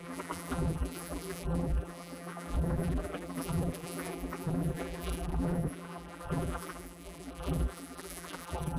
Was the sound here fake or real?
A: fake